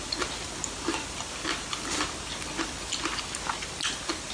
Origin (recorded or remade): recorded